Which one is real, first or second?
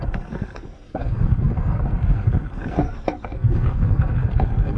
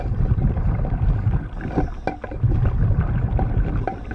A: second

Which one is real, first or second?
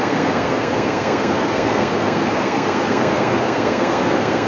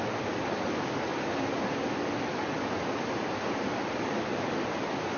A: second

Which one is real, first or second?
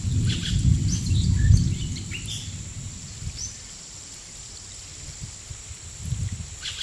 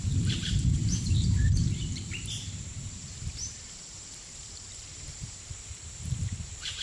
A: first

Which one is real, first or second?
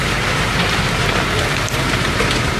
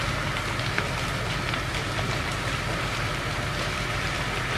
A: second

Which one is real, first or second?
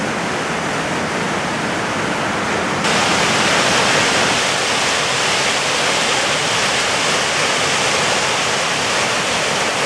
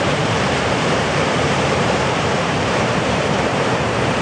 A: first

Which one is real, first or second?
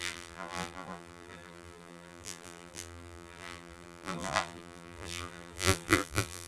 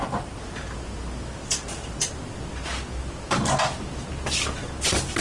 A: second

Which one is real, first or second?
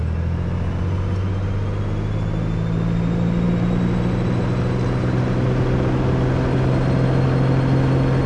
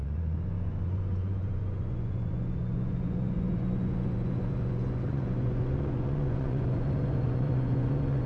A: first